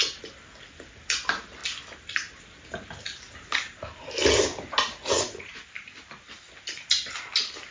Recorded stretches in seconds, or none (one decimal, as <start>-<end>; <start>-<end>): 0.0-5.0; 5.6-7.7